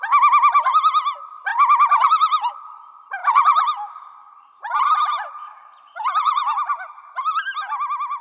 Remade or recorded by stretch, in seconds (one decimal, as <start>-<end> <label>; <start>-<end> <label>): 0.0-1.5 recorded; 1.5-2.5 remade; 2.5-3.2 recorded; 3.2-7.1 remade; 7.1-8.2 recorded